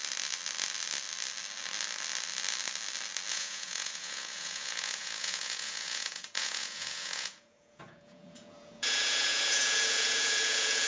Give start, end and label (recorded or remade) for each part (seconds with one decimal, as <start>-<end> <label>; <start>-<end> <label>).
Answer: 0.0-3.3 recorded; 3.3-10.9 remade